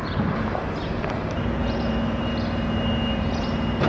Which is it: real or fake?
fake